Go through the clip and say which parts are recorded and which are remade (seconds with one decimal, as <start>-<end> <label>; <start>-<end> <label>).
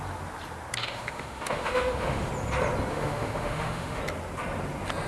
0.0-0.8 recorded; 0.8-2.3 remade; 2.3-2.9 recorded; 2.9-4.0 remade; 4.0-5.1 recorded